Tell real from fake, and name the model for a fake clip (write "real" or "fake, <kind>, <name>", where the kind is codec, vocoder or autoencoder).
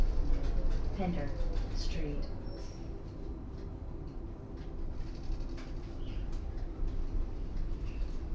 real